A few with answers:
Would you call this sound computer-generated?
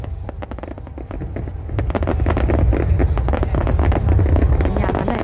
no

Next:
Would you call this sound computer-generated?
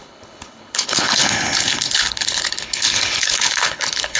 yes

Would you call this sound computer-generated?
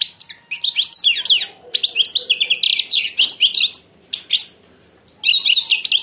no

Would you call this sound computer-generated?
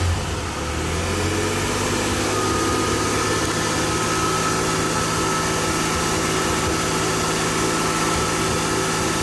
no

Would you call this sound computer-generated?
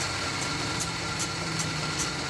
no